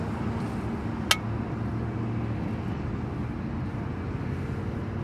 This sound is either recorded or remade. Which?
recorded